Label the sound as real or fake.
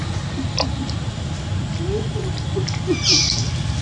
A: real